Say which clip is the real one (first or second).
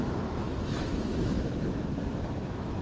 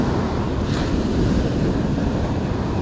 second